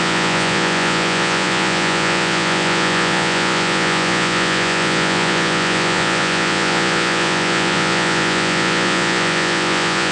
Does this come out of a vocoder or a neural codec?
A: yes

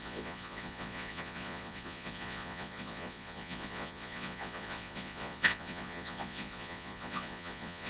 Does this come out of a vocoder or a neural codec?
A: yes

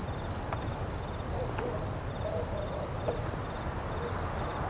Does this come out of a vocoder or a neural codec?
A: no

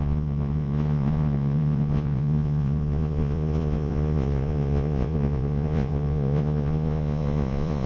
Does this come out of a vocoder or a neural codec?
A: yes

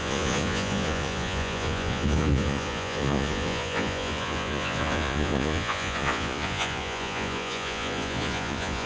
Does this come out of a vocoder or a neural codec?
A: yes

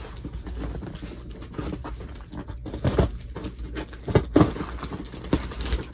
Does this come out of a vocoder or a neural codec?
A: no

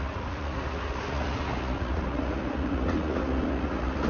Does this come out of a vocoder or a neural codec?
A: yes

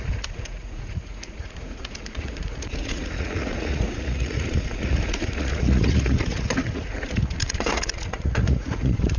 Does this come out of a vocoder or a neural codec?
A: yes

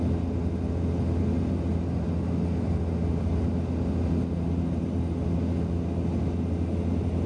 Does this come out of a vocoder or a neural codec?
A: no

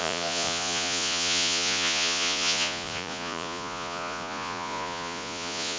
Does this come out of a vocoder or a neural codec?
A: yes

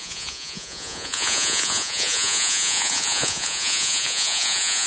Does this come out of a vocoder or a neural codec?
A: yes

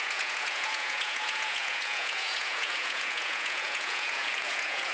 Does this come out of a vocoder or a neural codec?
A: yes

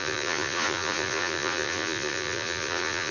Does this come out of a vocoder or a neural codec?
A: yes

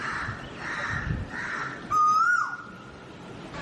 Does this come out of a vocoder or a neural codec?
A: no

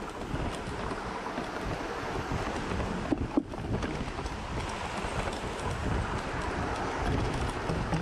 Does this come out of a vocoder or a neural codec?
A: no